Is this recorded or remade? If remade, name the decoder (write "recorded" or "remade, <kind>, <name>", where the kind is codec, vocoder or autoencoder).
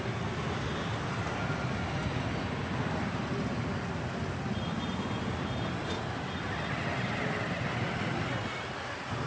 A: recorded